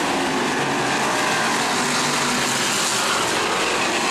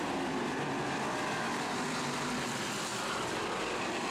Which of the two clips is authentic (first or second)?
first